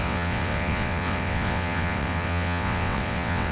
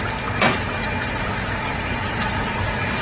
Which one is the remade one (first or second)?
first